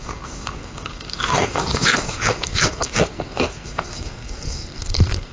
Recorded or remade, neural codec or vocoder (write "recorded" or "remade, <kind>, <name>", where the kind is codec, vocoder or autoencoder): remade, codec, SNAC